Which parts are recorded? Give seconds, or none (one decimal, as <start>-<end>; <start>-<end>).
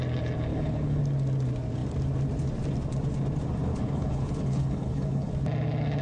0.0-0.5; 1.0-3.7; 5.3-6.0